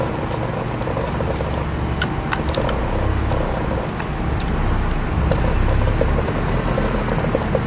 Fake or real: real